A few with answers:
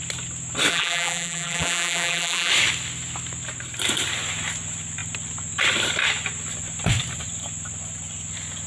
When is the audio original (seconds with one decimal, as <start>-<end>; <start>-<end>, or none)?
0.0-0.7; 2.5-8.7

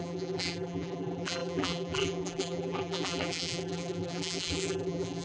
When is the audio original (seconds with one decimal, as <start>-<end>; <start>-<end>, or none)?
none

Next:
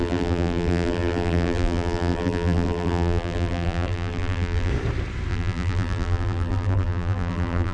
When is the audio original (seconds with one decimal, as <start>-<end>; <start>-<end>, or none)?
4.7-5.3

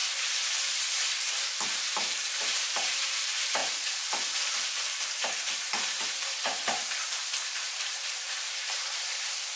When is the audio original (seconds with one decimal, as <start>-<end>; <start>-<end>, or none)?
0.0-1.2

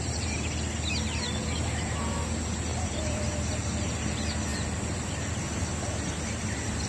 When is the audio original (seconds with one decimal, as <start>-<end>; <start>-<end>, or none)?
0.0-2.7; 3.2-6.9

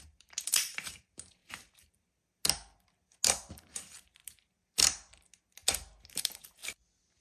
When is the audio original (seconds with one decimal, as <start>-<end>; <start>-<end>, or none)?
1.4-3.5; 4.2-6.1; 6.6-7.2

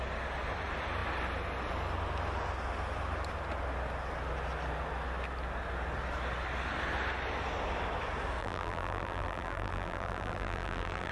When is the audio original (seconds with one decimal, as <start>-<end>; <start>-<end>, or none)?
0.0-8.4